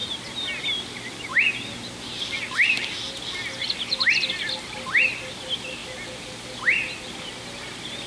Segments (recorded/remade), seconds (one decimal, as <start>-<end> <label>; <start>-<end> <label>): 0.0-8.1 recorded